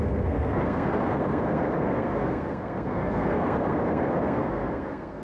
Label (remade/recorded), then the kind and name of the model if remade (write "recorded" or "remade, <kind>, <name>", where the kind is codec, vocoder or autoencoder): remade, codec, SNAC